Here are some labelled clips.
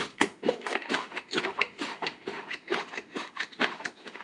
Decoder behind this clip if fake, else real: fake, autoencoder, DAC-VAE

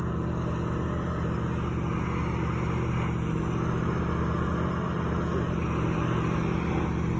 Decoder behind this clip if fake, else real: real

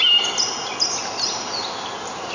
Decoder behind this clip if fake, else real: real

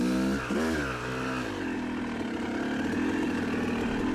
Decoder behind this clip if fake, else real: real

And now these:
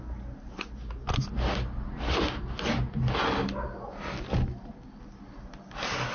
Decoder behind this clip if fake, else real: real